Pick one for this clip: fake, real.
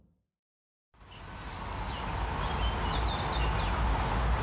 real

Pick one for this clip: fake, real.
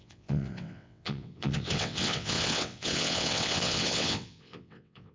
fake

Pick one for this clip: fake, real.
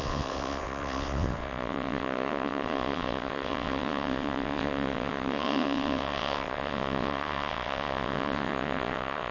fake